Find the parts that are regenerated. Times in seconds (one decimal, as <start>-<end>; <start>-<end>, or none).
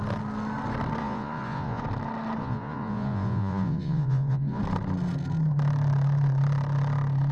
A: 1.0-1.8; 2.4-4.6